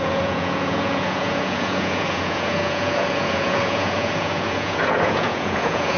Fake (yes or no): yes